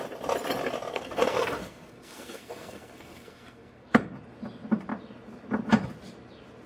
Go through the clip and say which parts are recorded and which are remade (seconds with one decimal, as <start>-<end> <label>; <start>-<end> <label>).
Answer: 0.0-0.9 recorded; 0.9-4.0 remade; 4.0-6.7 recorded